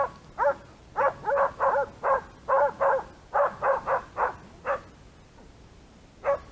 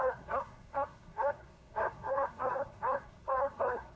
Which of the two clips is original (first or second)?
first